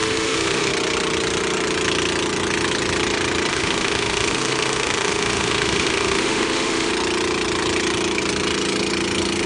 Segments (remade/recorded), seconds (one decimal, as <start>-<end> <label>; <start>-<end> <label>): 0.0-0.7 remade; 0.7-3.5 recorded; 3.5-6.9 remade; 6.9-9.5 recorded